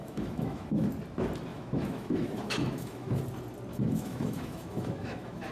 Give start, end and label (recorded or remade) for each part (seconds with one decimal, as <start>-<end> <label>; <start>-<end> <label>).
0.0-0.9 remade; 0.9-1.5 recorded; 1.5-3.2 remade; 3.2-3.7 recorded; 3.7-5.5 remade